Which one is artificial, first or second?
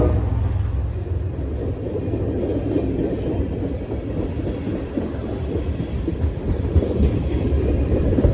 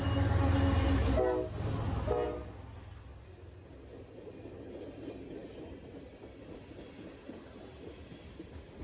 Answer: first